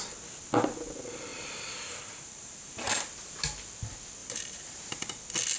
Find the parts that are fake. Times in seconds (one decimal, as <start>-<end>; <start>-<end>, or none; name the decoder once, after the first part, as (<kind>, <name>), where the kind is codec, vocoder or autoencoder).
1.3-2.7 (vocoder, BigVGAN v2); 4.2-5.1